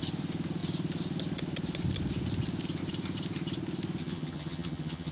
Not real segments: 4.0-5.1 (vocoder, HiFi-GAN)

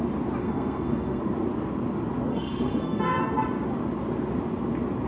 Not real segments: 0.4-1.2 (codec, SNAC); 2.3-3.3

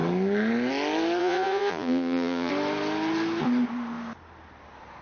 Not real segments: 1.2-2.5 (vocoder, Vocos)

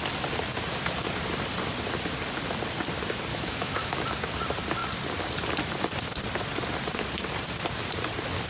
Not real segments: 3.3-4.0 (autoencoder, DAC-VAE)

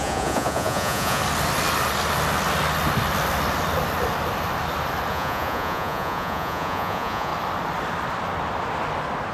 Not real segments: 0.0-1.2 (vocoder, Vocos); 5.1-7.3